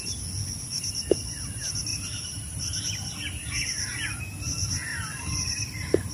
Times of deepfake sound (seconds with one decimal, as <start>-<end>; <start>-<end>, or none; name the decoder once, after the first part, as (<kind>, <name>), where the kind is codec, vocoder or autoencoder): 1.9-3.5 (vocoder, BigVGAN v2); 4.9-6.1